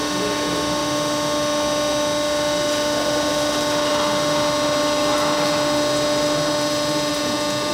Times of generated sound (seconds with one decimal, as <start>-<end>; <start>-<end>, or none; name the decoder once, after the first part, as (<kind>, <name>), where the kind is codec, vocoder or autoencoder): 7.1-7.7 (vocoder, Vocos)